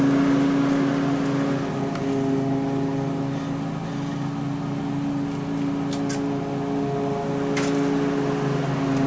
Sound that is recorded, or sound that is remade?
recorded